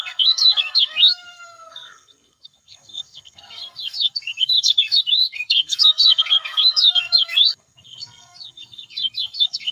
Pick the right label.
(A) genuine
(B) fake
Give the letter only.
B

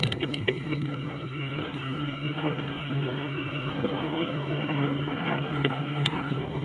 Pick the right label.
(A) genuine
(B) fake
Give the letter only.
B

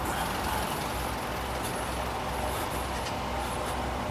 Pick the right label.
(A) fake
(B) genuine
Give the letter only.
B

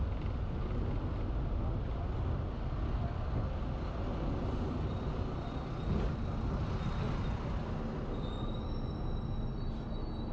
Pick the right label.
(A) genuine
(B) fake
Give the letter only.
A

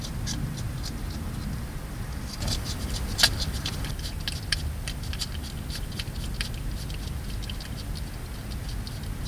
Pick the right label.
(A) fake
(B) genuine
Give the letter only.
B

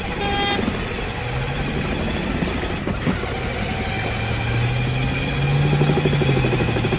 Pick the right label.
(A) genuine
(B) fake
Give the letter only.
A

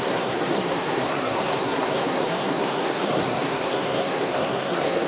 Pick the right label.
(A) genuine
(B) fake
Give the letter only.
B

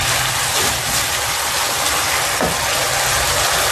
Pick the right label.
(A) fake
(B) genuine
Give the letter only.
B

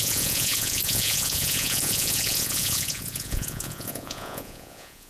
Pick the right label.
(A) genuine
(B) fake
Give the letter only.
B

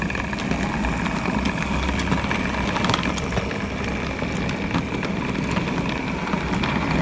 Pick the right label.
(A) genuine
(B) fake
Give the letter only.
A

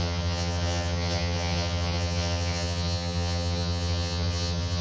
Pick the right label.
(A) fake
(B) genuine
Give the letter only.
A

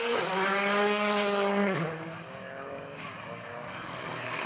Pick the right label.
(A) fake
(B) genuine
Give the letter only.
A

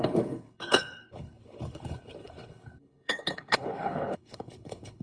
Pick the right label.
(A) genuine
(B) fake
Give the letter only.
B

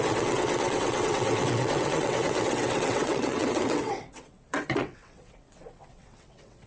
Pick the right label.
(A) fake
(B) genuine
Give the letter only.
A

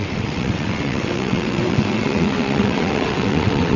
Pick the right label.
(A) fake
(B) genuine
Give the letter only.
A